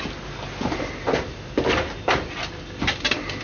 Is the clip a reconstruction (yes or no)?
no